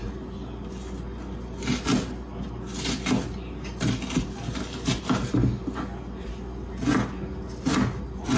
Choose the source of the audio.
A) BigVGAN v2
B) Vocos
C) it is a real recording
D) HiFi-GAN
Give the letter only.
C